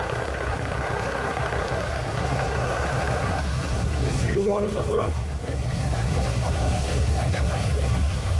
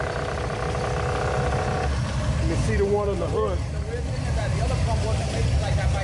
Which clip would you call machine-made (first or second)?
first